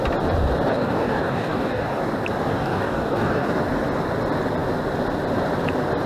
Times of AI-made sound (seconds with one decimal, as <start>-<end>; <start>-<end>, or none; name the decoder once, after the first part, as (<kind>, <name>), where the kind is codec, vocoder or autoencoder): 0.7-2.0 (codec, DAC); 2.6-3.5